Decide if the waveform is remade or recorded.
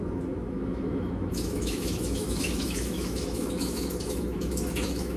remade